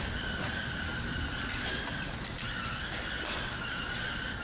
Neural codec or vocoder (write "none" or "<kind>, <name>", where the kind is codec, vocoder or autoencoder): none